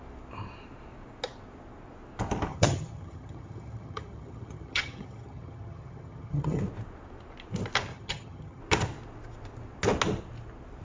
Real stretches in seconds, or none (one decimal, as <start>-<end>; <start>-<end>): 0.0-2.5; 6.6-7.9; 8.6-10.8